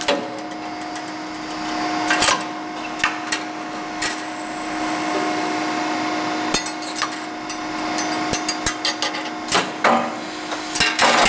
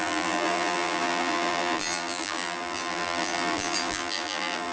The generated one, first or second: second